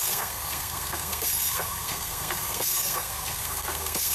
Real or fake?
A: fake